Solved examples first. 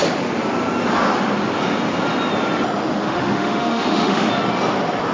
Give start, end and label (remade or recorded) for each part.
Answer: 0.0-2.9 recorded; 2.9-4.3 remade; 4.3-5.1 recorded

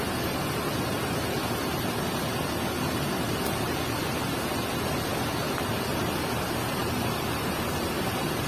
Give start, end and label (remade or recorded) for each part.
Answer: 0.0-8.5 recorded

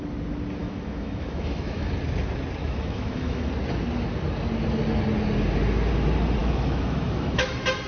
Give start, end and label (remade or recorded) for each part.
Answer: 0.0-0.6 recorded; 0.6-1.9 remade; 1.9-2.6 recorded; 2.6-3.5 remade; 3.5-6.4 recorded; 6.4-7.5 remade; 7.5-7.9 recorded

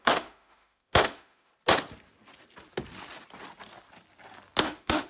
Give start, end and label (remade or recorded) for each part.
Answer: 0.0-1.5 remade; 1.5-4.6 recorded; 4.6-5.1 remade

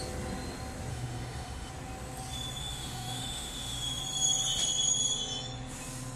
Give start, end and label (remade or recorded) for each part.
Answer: 0.0-0.9 recorded; 0.9-1.7 remade; 1.7-2.6 recorded; 2.6-4.0 remade; 4.0-6.2 recorded